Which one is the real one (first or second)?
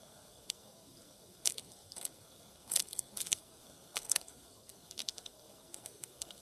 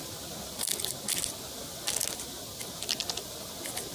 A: second